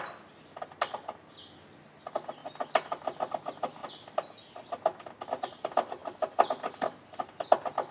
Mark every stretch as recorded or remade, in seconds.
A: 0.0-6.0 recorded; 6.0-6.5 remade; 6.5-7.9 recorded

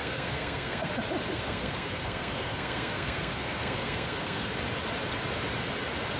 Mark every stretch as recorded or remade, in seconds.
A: 0.0-0.9 remade; 0.9-1.3 recorded; 1.3-4.5 remade; 4.5-6.2 recorded